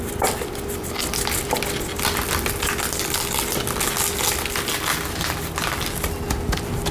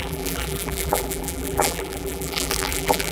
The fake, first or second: second